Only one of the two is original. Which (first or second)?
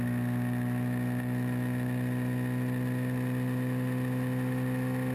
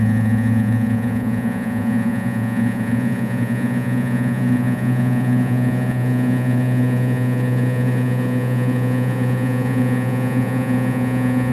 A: first